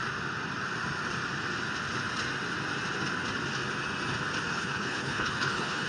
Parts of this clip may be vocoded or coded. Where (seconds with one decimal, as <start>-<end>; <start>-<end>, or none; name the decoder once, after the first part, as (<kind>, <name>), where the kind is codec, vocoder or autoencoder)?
4.5-5.9 (codec, HILCodec)